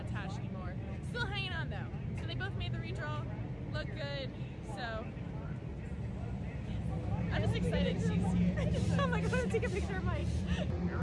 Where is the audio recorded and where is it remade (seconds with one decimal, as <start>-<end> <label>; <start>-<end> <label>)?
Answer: 0.0-11.0 recorded